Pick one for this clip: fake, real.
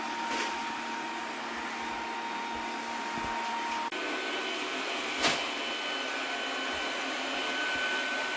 real